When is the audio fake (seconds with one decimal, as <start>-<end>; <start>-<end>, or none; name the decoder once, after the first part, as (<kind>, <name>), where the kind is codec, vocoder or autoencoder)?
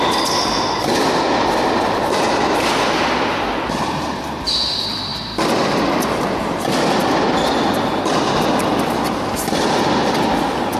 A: none